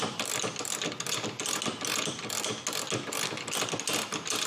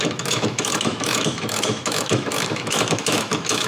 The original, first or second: first